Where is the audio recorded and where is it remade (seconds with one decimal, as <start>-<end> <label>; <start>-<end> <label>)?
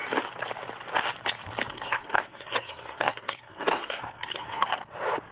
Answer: 0.0-1.7 recorded; 1.7-4.7 remade; 4.7-5.3 recorded